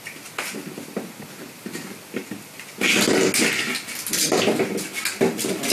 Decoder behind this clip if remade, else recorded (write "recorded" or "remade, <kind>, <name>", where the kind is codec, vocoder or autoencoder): recorded